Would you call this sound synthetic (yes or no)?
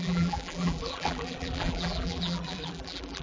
yes